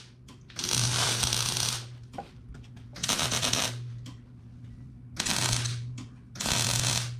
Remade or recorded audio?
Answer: recorded